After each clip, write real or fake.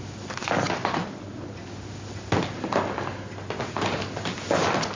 real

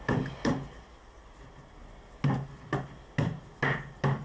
real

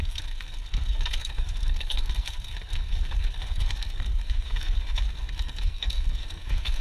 fake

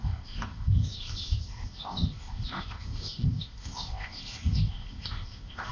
fake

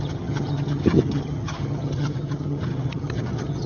fake